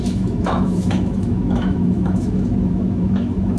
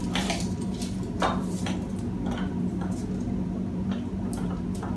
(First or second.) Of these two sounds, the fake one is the first